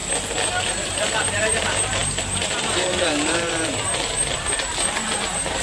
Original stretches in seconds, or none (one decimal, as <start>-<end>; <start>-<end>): 0.0-0.6